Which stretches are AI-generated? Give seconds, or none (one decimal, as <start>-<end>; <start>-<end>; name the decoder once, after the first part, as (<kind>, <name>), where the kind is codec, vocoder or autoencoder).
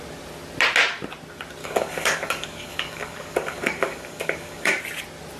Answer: 1.6-4.8 (codec, DAC)